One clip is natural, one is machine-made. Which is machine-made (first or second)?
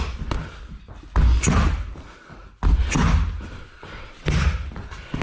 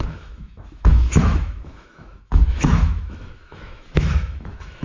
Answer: second